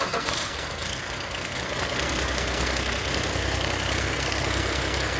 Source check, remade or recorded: remade